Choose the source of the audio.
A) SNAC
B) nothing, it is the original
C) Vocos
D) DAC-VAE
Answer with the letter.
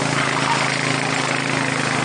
B